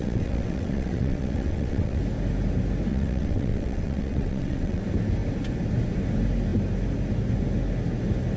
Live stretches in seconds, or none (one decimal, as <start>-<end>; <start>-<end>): 2.0-2.9; 4.8-8.4